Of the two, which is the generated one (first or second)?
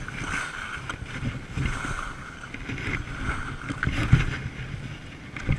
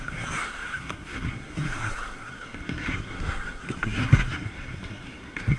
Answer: second